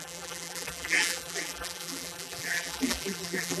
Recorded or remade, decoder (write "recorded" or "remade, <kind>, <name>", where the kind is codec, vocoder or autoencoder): remade, vocoder, BigVGAN v2